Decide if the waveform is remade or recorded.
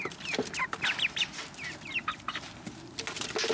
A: recorded